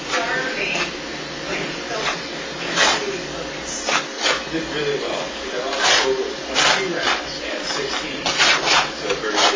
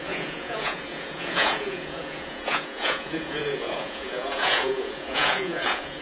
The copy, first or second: second